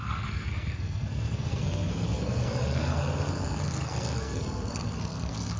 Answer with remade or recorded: remade